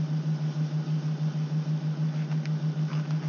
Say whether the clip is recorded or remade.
recorded